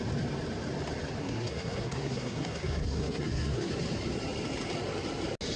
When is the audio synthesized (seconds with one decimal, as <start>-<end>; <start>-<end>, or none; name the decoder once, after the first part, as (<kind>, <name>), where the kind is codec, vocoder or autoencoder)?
1.2-3.7 (codec, SNAC)

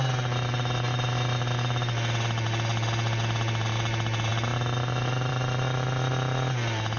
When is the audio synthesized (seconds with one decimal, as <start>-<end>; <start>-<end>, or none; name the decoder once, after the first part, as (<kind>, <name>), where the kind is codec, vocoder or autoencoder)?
none

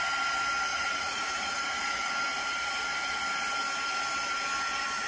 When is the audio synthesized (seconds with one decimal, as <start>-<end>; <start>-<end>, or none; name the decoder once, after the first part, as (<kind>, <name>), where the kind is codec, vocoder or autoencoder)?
0.7-2.1 (vocoder, Vocos)

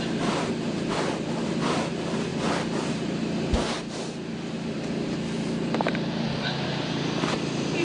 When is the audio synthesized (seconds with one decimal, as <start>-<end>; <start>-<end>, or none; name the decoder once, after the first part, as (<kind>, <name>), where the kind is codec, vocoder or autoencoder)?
none

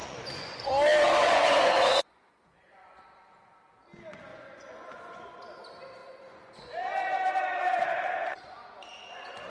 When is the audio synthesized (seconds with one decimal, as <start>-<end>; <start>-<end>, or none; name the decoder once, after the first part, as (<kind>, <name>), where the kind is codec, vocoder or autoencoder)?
0.0-0.7 (vocoder, Vocos); 1.2-3.0; 4.3-5.2; 6.0-9.5

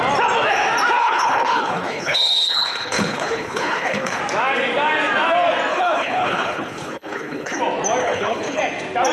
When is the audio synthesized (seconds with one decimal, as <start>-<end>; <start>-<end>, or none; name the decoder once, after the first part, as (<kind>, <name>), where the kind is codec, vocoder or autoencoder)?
1.0-4.2 (codec, HILCodec); 5.7-7.6; 8.0-8.6

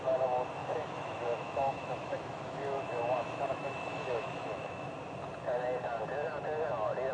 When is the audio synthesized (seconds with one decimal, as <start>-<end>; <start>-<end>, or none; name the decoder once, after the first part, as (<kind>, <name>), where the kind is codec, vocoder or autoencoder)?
0.6-4.9 (autoencoder, DAC-VAE)

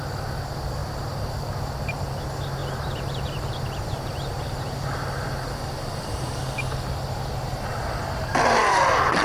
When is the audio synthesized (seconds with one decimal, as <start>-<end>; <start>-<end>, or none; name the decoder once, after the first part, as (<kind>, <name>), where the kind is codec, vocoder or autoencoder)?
0.8-1.3 (vocoder, BigVGAN v2); 2.6-6.9